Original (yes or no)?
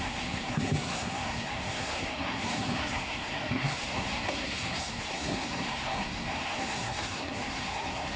no